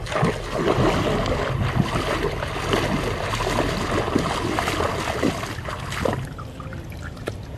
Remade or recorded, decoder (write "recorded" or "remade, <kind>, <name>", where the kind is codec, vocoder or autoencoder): recorded